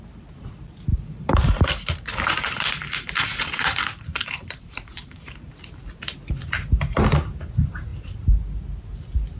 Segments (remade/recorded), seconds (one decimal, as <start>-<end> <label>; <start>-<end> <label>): 0.0-0.9 recorded; 0.9-5.5 remade; 5.5-9.4 recorded